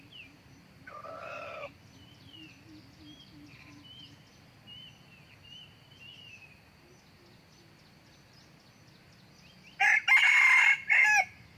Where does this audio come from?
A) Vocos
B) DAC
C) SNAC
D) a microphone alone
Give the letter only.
D